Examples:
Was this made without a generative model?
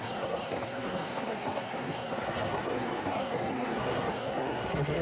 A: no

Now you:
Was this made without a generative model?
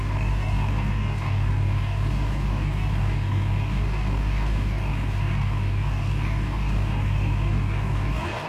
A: no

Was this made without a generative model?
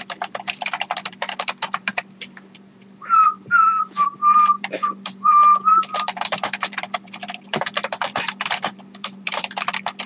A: no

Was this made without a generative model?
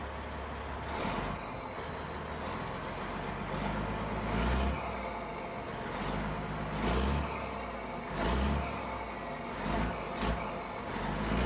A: yes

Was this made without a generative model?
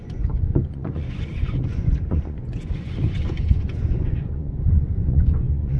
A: no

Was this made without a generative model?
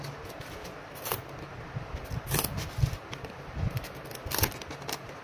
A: yes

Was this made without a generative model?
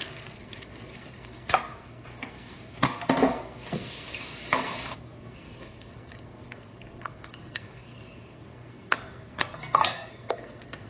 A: no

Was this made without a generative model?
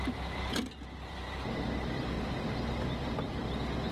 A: yes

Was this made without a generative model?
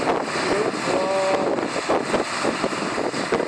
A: yes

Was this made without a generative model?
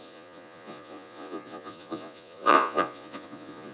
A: no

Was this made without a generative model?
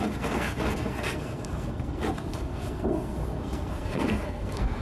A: no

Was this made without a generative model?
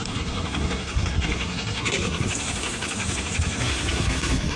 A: no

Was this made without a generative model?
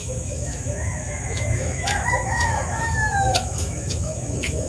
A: no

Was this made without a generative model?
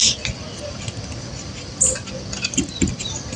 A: no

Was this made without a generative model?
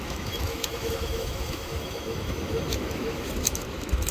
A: no